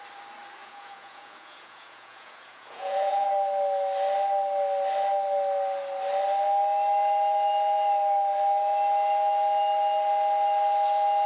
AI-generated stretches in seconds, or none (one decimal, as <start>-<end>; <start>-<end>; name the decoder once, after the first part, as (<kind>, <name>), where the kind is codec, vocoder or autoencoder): 0.6-3.3 (vocoder, Vocos)